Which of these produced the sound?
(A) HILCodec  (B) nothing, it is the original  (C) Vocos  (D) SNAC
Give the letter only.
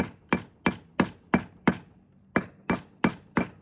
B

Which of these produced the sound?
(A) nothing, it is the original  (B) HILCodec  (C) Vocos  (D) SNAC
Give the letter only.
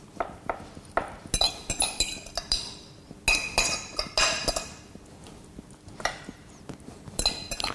A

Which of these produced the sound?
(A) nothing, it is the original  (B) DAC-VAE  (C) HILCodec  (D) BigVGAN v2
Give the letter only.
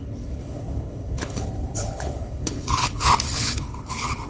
C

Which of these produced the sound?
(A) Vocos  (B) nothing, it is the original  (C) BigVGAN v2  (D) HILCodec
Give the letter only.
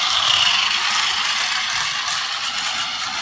B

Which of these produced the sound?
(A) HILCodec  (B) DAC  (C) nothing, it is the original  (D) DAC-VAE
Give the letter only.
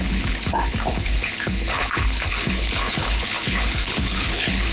A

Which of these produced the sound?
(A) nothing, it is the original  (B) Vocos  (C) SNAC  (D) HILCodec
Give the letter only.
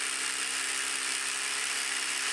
A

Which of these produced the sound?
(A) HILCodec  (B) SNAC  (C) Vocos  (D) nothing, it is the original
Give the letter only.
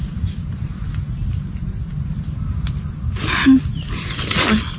D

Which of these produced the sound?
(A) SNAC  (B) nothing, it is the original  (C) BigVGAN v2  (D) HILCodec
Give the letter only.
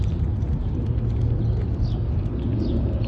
B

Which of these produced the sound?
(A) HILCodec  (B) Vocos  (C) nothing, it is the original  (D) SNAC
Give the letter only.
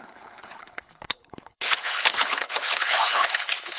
A